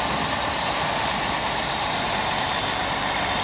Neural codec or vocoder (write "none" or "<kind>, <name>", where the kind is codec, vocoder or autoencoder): vocoder, BigVGAN v2